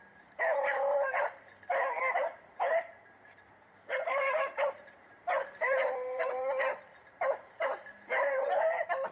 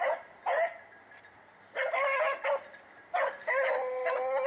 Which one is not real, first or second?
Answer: first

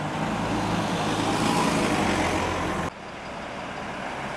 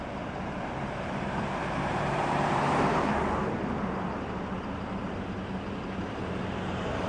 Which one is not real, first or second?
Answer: second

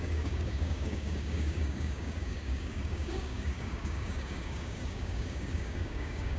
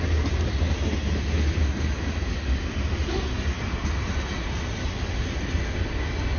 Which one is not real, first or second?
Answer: first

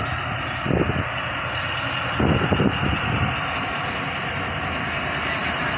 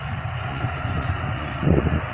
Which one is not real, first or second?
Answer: second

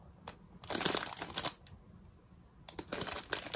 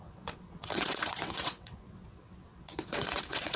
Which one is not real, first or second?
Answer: second